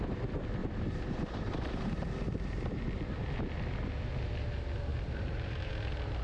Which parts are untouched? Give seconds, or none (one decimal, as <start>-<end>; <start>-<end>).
0.0-0.6; 2.8-4.9; 5.7-6.2